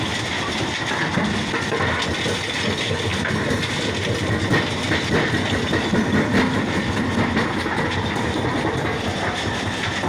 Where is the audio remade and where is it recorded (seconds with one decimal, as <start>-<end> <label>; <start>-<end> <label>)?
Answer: 0.0-10.1 recorded